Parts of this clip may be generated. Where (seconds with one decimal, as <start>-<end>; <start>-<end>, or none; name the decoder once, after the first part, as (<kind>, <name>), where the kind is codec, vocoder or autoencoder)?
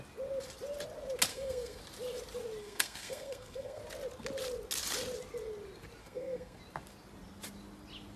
1.3-1.8 (codec, SNAC); 2.6-3.8; 6.0-6.6